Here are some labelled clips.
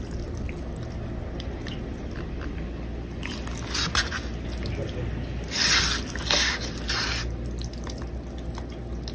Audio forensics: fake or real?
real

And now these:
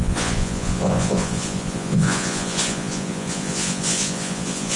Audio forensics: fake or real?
fake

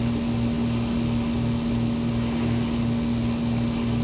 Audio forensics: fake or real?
real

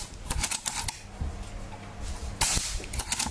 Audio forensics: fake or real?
real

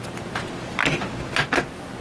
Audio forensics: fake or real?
real